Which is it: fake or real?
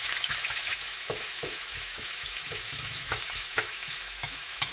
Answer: fake